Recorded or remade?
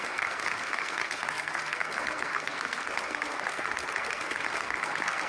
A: remade